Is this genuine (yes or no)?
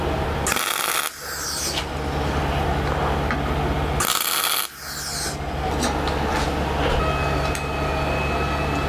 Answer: yes